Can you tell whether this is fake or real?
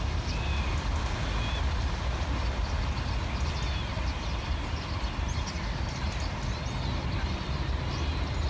real